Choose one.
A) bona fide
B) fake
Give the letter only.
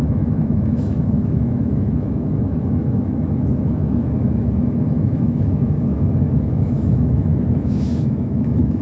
B